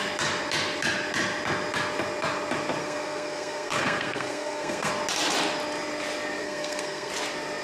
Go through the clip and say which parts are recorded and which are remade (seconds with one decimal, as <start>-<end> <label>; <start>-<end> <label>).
0.0-2.8 recorded; 2.8-4.9 remade; 4.9-6.4 recorded; 6.4-7.1 remade; 7.1-7.6 recorded